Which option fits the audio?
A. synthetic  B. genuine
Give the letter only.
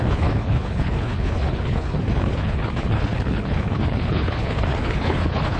A